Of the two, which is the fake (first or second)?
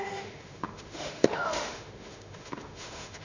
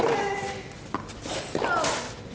first